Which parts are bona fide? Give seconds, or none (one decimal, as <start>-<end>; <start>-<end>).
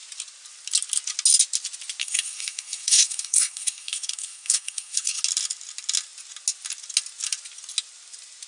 0.0-2.0; 5.2-8.5